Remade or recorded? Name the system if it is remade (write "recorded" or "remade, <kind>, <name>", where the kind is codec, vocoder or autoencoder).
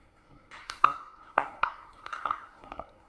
remade, codec, SNAC